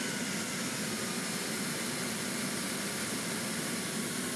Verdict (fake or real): real